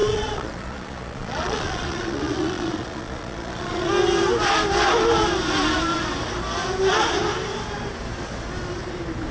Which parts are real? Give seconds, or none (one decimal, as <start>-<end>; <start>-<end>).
3.9-9.3